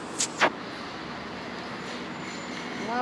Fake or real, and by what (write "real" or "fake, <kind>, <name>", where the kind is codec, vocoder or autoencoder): real